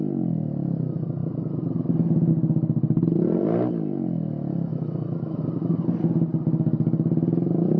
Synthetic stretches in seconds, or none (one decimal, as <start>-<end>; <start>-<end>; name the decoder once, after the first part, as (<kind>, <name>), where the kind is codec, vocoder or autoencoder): 4.7-5.4 (autoencoder, DAC-VAE)